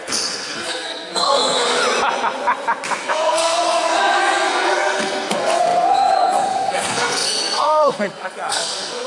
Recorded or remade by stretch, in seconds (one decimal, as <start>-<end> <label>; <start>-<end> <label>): 0.0-1.8 remade; 1.8-3.0 recorded; 3.0-9.1 remade